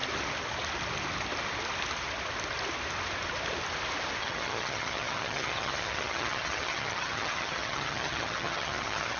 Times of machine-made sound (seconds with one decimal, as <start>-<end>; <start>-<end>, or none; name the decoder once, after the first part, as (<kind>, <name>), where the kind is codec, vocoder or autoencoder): 4.2-9.2 (vocoder, HiFi-GAN)